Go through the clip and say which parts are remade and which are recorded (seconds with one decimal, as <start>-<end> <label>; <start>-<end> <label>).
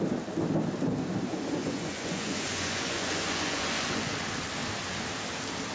0.0-1.6 recorded; 1.6-4.1 remade; 4.1-5.7 recorded